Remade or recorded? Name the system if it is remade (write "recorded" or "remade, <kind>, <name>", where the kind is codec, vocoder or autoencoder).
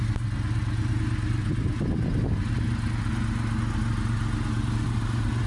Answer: recorded